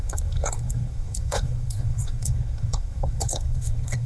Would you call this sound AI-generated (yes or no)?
yes